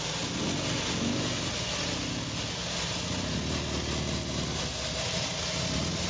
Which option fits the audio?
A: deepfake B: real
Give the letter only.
B